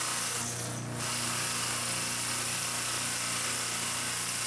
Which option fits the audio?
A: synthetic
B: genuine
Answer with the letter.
B